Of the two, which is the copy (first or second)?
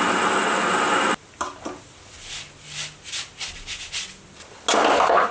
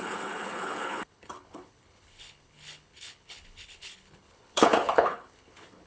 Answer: second